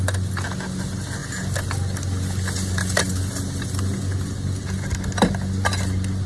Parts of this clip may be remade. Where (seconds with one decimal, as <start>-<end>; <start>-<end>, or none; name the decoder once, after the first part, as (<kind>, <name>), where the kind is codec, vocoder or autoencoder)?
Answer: none